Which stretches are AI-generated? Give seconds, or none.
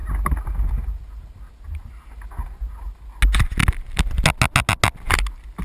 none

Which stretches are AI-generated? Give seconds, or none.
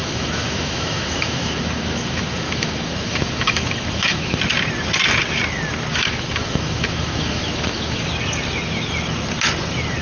0.0-4.4 (autoencoder, DAC-VAE); 5.9-8.1